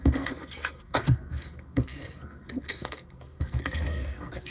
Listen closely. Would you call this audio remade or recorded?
remade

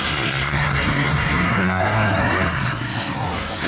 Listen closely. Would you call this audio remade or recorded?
remade